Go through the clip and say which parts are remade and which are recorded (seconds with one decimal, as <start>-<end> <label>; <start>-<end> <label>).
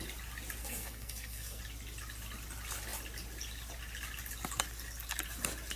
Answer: 0.0-0.6 recorded; 0.6-1.6 remade; 1.6-5.8 recorded